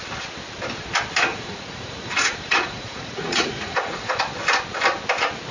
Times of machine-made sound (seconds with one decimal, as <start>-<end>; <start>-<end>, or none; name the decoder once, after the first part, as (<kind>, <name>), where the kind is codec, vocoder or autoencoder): 1.3-4.2 (vocoder, Vocos)